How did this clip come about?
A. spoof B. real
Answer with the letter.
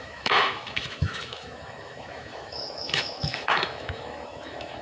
A